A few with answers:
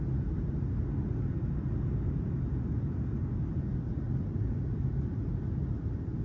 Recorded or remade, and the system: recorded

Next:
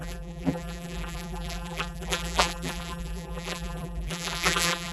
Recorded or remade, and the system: remade, vocoder, BigVGAN v2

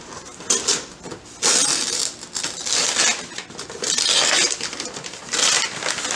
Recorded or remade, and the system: recorded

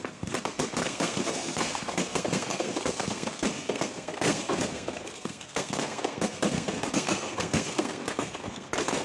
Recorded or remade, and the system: remade, codec, SNAC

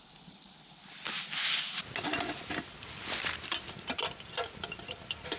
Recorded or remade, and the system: recorded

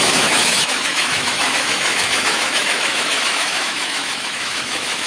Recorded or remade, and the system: remade, autoencoder, DAC-VAE